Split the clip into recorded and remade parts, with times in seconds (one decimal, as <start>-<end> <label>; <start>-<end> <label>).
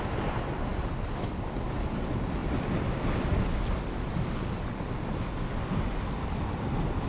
0.0-7.1 recorded